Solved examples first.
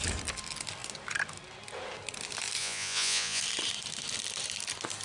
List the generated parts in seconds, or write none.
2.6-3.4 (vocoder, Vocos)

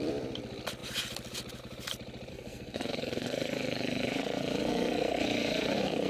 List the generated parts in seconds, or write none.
2.3-6.1 (codec, SNAC)

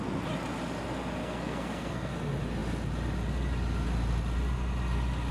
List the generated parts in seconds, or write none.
1.2-2.1 (codec, SNAC)